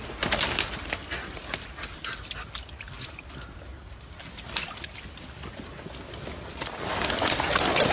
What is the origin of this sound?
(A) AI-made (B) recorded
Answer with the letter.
B